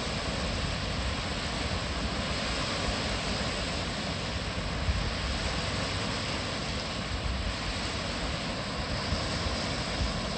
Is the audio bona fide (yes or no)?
yes